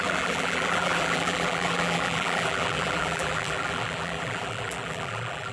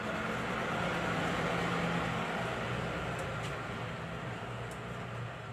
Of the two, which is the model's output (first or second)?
first